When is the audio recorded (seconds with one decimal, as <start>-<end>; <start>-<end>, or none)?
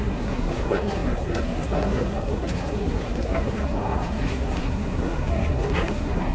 none